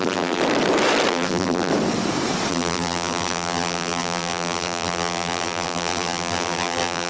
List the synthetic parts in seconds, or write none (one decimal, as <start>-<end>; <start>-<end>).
0.0-0.4; 1.1-1.7; 2.5-7.1